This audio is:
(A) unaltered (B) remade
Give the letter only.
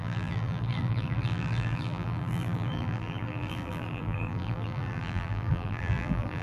B